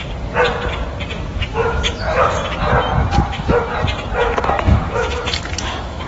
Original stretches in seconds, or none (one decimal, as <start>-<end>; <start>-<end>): 0.0-1.5; 2.2-3.0; 3.6-4.2